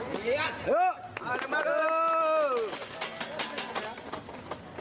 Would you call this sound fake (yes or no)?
no